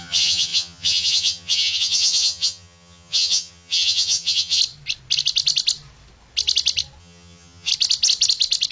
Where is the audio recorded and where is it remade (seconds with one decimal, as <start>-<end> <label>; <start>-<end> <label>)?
0.0-4.6 remade; 4.6-7.0 recorded; 7.0-7.7 remade; 7.7-8.7 recorded